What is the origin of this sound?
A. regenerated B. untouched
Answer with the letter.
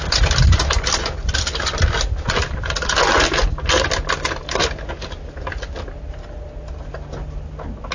B